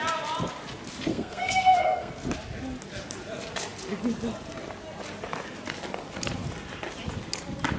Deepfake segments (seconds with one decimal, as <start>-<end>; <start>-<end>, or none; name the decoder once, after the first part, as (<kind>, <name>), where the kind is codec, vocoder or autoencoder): 1.1-2.1 (codec, SNAC)